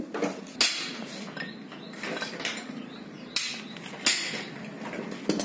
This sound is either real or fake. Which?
real